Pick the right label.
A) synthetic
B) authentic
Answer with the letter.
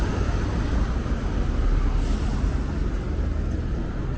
B